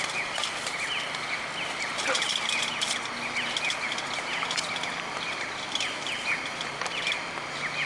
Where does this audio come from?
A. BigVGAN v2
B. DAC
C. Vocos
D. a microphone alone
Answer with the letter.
D